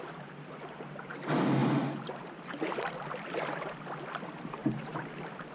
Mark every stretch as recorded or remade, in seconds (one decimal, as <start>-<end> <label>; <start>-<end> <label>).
0.0-1.6 recorded; 1.6-2.5 remade; 2.5-4.6 recorded; 4.6-5.5 remade